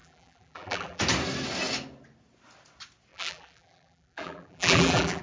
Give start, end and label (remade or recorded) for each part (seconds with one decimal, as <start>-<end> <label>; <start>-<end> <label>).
0.0-1.0 remade; 1.0-3.1 recorded; 3.1-5.2 remade